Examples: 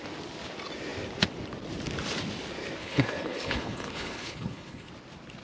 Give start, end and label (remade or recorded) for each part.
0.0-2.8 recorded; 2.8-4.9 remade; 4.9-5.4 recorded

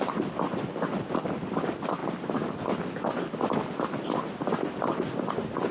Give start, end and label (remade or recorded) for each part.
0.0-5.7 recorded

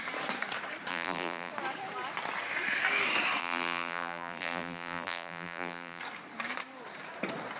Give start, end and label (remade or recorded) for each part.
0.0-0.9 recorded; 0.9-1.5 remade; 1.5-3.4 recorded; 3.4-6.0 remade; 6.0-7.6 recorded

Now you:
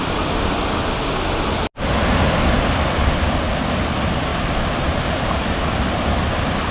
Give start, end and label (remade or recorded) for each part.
0.0-4.3 recorded; 4.3-5.8 remade; 5.8-6.7 recorded